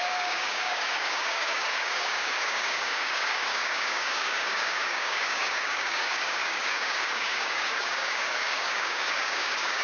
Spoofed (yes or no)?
yes